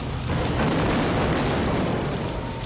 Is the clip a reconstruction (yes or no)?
no